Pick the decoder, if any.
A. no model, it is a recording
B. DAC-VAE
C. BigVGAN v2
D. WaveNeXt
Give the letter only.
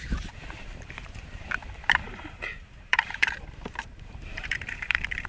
C